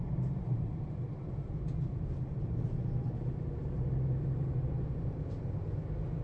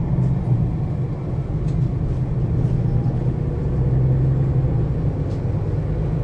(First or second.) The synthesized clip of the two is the first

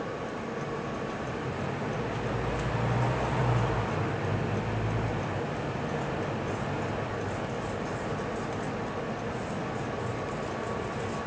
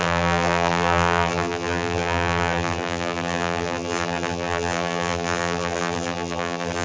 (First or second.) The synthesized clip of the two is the second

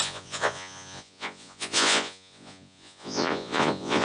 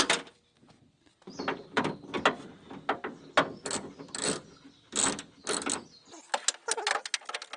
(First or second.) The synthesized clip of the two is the first